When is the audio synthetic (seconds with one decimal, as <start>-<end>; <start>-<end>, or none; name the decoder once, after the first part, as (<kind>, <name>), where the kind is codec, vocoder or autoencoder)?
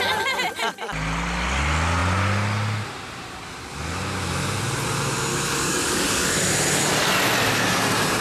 5.3-6.3 (codec, DAC)